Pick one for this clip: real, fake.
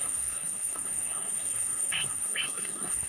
fake